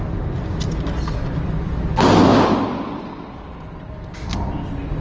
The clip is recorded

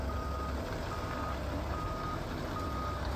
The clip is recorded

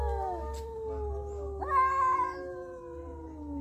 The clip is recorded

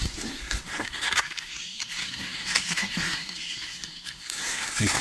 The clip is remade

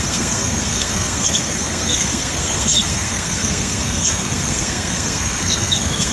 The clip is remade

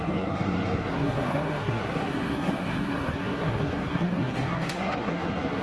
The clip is remade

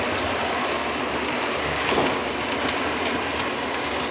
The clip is recorded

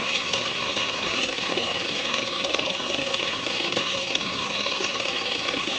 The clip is remade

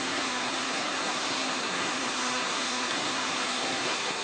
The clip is remade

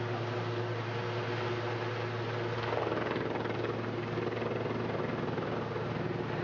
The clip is recorded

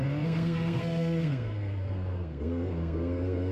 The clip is remade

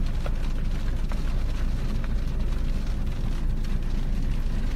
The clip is recorded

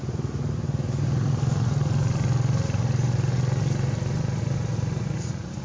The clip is recorded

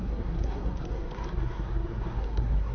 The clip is remade